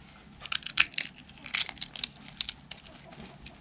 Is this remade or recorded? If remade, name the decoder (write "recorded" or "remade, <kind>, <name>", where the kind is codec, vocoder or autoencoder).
recorded